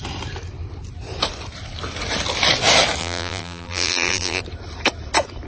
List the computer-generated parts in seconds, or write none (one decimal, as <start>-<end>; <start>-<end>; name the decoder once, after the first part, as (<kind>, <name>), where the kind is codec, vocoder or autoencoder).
3.0-4.4 (vocoder, BigVGAN v2)

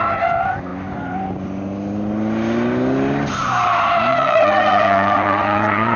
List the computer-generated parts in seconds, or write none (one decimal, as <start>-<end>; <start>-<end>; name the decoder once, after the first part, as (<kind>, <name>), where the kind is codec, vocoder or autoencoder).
4.1-6.0 (vocoder, WaveNeXt)

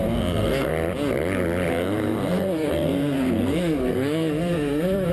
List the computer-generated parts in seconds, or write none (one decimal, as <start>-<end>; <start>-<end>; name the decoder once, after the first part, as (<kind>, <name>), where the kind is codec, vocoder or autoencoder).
0.0-0.7 (codec, SNAC); 1.7-5.1

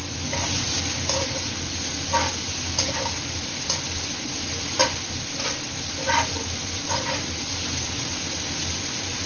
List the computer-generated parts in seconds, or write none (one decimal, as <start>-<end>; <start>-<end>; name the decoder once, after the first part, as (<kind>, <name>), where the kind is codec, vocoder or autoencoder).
none

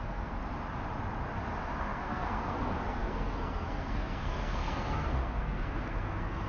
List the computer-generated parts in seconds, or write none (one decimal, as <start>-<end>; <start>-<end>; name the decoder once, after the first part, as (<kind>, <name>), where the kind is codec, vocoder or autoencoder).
0.0-0.4 (codec, SNAC); 1.8-6.5

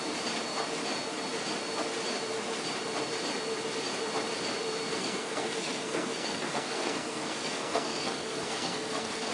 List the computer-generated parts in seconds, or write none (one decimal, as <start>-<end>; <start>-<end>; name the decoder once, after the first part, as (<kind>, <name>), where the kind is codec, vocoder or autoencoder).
4.9-9.3 (codec, SNAC)

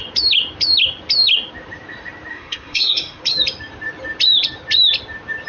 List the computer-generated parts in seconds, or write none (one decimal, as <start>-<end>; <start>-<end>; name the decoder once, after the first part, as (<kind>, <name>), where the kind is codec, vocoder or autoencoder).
2.3-3.2 (codec, SNAC)

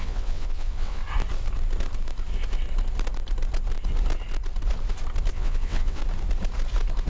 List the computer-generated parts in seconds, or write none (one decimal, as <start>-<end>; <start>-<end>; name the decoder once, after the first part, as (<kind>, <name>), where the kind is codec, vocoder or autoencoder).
0.0-1.0 (vocoder, WaveNeXt); 5.3-6.0